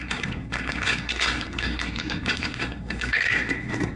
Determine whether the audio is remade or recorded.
remade